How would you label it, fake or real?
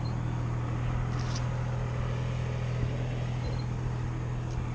real